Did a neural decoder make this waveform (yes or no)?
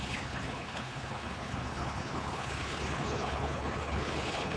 yes